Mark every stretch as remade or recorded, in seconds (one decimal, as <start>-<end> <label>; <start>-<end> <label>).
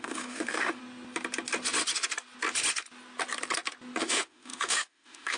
0.0-0.8 remade; 0.8-4.0 recorded; 4.0-5.4 remade